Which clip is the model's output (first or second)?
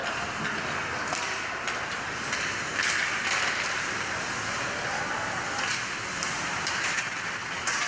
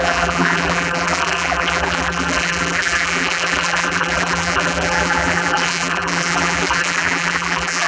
second